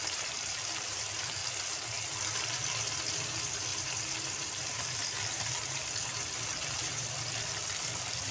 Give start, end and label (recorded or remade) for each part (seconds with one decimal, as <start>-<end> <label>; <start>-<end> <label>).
0.0-1.4 remade; 1.4-2.4 recorded; 2.4-8.3 remade